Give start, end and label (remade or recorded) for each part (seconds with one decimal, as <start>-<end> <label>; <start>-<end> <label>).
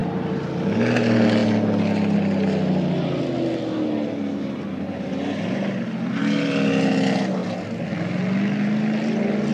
0.0-0.6 remade; 0.6-9.5 recorded